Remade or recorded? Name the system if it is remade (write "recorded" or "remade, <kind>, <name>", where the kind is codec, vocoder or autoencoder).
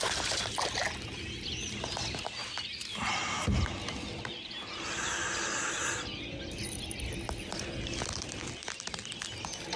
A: recorded